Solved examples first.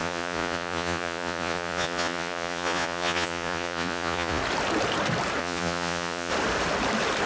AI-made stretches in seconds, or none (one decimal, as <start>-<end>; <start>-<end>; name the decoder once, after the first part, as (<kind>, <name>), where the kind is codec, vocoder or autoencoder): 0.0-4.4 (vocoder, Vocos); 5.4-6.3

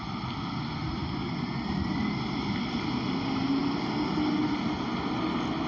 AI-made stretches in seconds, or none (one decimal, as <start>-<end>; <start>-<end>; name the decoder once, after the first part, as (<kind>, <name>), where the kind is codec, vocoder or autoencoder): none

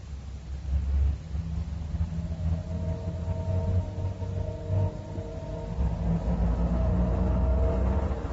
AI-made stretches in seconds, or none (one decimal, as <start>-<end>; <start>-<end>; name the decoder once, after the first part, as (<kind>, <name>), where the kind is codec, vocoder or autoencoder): 7.5-8.3 (vocoder, BigVGAN v2)

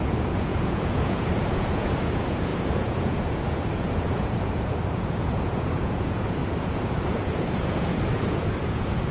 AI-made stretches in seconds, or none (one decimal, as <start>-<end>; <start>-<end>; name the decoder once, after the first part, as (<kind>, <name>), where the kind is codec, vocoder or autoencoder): 0.0-9.1 (vocoder, Vocos)

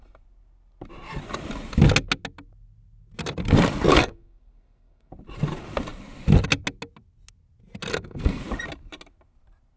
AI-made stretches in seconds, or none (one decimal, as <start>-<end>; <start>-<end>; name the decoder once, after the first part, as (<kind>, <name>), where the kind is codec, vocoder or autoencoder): 3.9-5.1 (codec, SNAC); 7.9-8.4